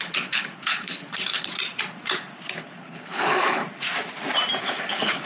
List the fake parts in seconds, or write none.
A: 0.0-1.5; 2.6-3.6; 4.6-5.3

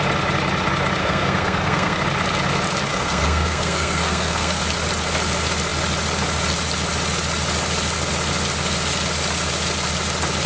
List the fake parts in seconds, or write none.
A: 1.0-2.0; 2.9-4.6

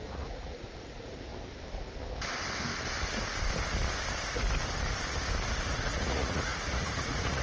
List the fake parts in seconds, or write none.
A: 0.0-1.3; 5.6-7.4

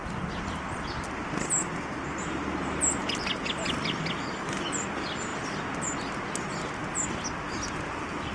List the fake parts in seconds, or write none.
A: none

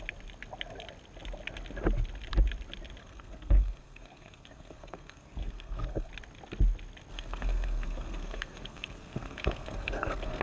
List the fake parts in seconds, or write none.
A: 3.0-6.1; 7.1-10.4

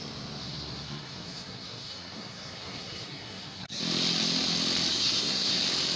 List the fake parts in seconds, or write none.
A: 0.4-3.8; 4.9-5.6